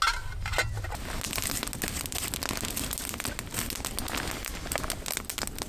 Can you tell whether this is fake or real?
real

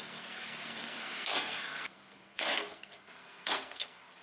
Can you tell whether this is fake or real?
fake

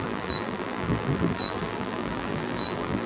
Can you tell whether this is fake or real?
fake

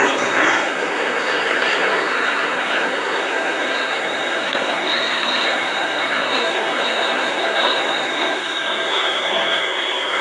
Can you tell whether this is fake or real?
fake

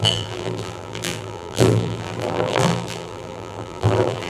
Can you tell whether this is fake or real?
fake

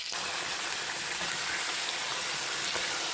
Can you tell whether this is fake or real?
real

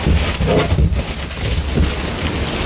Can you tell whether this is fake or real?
real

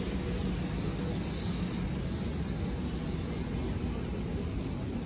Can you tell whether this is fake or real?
real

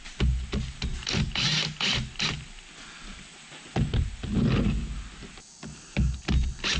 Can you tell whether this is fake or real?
real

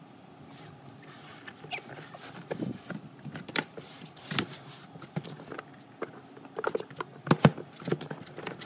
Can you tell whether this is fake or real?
fake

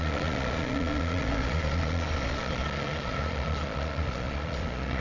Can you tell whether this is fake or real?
fake